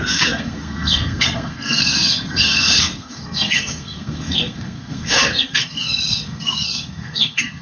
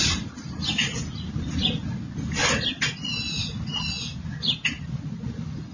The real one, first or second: second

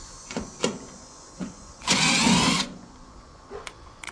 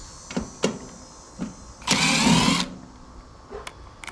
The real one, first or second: second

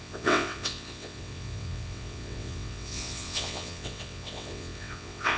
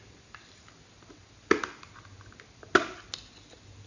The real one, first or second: second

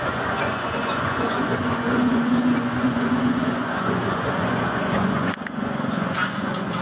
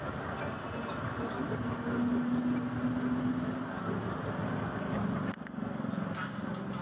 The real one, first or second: second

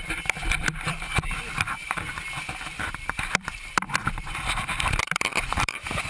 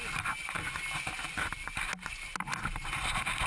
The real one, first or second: second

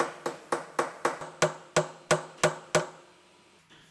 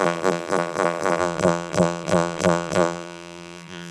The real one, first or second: first